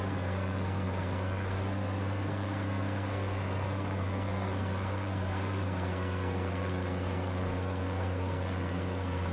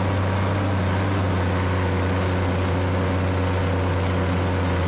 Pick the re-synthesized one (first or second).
first